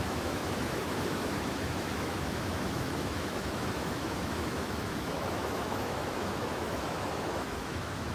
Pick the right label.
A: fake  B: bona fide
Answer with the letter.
A